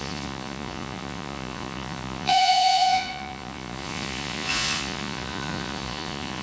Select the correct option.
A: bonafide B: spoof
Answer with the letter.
B